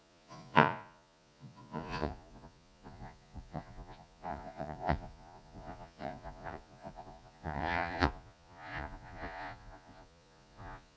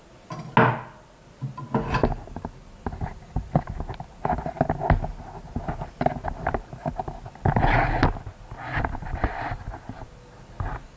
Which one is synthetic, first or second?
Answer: first